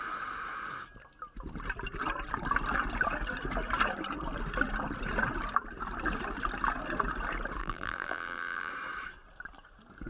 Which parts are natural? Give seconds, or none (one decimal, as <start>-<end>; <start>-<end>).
0.0-7.6; 8.7-10.1